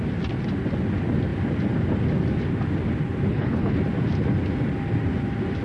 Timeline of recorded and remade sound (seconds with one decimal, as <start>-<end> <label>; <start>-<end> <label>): 0.0-3.3 recorded; 3.3-3.8 remade; 3.8-5.6 recorded